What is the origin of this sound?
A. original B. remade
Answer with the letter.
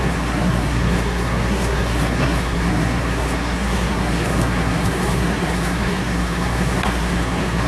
B